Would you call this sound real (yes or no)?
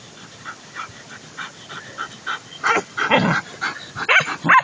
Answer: yes